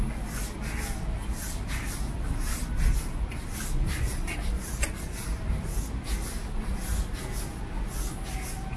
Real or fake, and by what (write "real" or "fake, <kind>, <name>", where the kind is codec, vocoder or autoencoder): real